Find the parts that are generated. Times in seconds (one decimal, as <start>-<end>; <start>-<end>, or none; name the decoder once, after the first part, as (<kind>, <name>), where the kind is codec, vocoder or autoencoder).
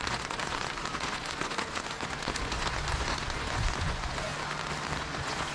0.0-4.3 (vocoder, Vocos); 5.0-5.5